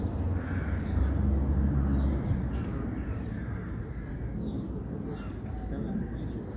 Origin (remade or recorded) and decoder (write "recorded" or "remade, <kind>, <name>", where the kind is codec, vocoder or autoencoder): recorded